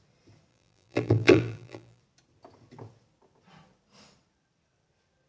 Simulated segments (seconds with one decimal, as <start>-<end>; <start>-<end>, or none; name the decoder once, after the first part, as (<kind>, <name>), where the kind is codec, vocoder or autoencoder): 0.5-2.0 (vocoder, BigVGAN v2)